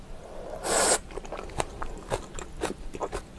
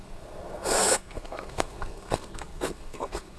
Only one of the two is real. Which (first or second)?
first